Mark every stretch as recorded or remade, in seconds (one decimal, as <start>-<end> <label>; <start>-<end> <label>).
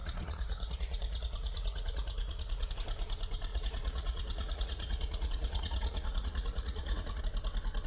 0.0-2.7 remade; 2.7-3.5 recorded; 3.5-7.2 remade; 7.2-7.9 recorded